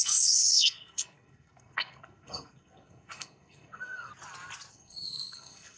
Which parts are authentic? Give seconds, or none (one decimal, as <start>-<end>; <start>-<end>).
4.1-4.7